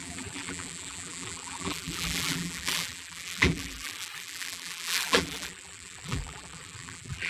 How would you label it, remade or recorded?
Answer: remade